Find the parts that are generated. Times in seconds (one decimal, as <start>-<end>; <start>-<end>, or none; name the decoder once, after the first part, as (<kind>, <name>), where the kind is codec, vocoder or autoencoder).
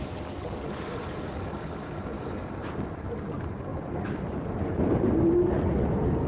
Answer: 2.4-3.1 (vocoder, BigVGAN v2); 3.7-5.2